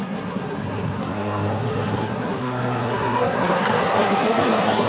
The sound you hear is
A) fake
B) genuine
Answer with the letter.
A